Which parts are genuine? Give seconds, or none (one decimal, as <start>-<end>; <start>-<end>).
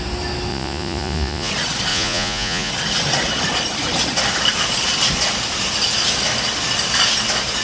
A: 0.0-0.5; 1.5-1.9; 2.7-7.6